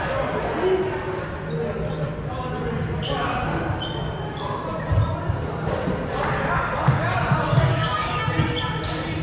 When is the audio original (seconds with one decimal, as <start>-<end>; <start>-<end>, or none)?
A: 0.0-7.5; 8.3-9.2